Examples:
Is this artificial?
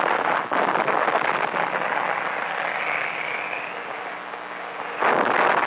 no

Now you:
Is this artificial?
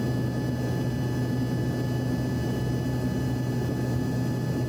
no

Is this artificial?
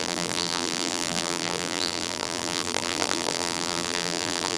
yes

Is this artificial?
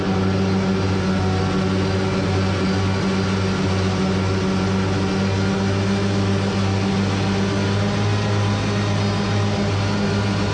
no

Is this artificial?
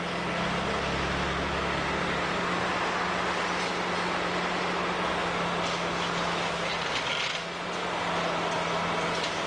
no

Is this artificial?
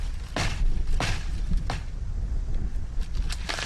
no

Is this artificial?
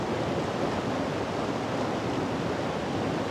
no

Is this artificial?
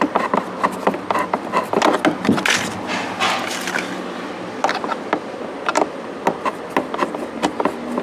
no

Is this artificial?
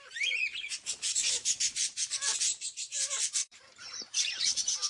yes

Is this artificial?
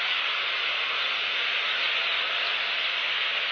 no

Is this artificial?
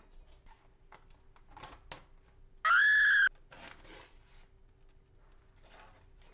no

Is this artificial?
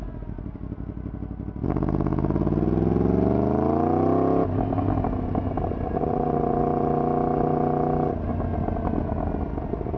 no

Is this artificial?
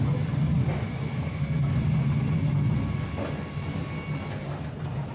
no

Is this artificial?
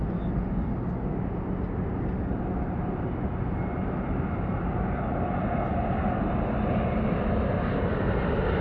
no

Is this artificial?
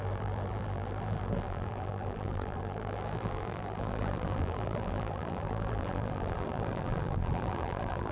yes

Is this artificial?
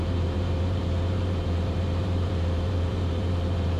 yes